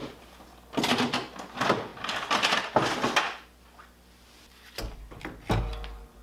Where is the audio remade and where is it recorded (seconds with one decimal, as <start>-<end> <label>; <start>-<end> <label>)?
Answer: 0.0-6.2 recorded